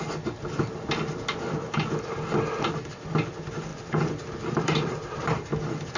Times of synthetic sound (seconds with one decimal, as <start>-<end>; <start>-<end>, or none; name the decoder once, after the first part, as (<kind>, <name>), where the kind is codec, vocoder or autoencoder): 3.7-5.5 (vocoder, BigVGAN v2)